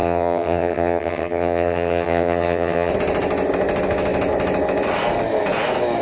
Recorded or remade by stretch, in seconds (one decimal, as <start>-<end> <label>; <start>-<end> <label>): 0.0-2.9 remade; 2.9-6.0 recorded

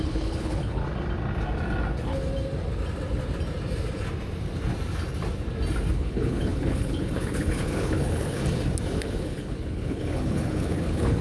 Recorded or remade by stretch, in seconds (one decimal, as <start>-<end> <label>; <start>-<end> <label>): 0.0-0.8 remade; 0.8-5.9 recorded; 5.9-8.4 remade; 8.4-9.0 recorded; 9.0-11.2 remade